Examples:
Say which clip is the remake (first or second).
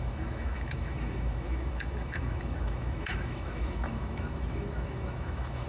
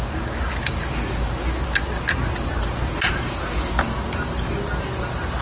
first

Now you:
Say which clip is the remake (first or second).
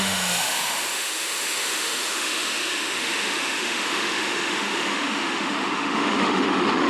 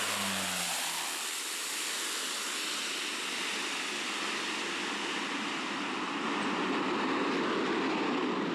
first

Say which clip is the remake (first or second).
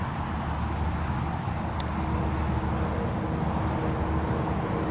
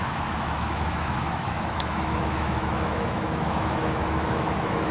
second